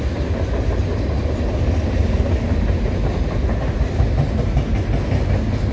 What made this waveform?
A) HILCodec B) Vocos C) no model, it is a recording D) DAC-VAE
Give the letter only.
C